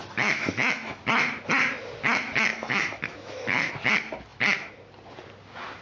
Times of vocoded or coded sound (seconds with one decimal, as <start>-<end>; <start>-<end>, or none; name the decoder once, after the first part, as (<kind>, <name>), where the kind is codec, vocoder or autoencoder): 0.0-1.0 (autoencoder, DAC-VAE); 2.5-3.7